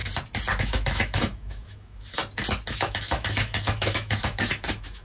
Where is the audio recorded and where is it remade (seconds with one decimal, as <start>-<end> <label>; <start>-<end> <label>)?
0.0-0.6 recorded; 0.6-2.2 remade; 2.2-2.7 recorded; 2.7-5.0 remade